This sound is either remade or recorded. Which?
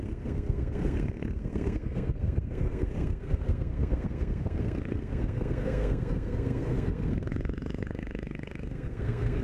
remade